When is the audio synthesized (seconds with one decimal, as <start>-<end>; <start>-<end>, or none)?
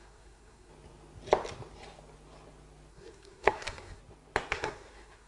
0.0-0.7; 2.9-4.0; 4.5-5.3